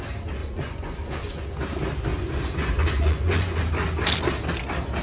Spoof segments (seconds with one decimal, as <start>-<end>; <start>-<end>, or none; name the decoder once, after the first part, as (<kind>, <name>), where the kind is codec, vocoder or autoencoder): 0.4-1.4 (vocoder, Vocos); 2.1-3.6

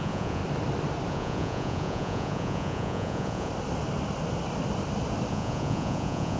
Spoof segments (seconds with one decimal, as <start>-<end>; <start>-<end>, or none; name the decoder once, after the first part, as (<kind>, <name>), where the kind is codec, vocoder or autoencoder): 0.0-0.4 (vocoder, Vocos); 1.1-3.5; 5.3-6.4